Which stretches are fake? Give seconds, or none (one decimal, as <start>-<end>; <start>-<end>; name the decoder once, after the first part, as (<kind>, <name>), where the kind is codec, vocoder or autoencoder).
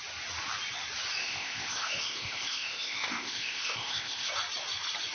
1.2-4.3 (codec, ZipCodec)